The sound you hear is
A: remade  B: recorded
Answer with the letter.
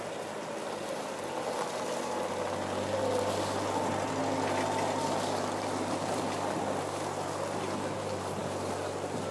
B